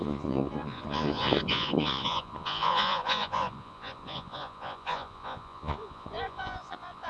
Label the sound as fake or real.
fake